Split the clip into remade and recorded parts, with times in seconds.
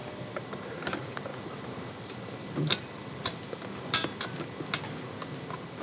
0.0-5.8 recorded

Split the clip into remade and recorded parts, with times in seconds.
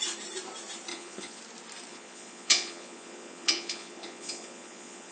0.0-0.9 recorded; 0.9-1.4 remade; 1.4-1.9 recorded; 1.9-5.1 remade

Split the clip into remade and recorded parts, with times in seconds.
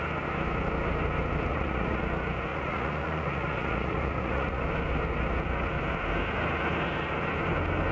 0.0-1.5 recorded; 1.5-2.0 remade; 2.0-2.5 recorded; 2.5-4.6 remade; 4.6-7.9 recorded